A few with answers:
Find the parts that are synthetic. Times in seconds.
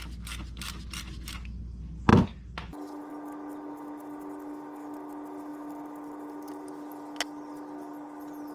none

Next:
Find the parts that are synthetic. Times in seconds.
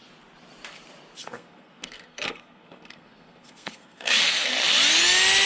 1.2-4.5 (codec, SNAC)